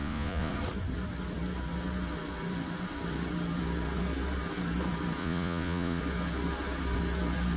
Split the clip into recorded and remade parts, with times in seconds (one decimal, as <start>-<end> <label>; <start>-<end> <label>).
0.0-0.5 remade; 0.5-5.2 recorded; 5.2-6.0 remade; 6.0-7.6 recorded